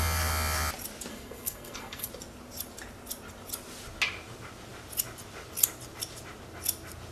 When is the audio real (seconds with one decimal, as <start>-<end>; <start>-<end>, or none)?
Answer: 0.0-1.1; 2.1-7.1